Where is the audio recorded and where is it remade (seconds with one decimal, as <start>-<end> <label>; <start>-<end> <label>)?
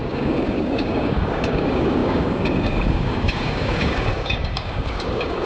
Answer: 0.0-5.5 remade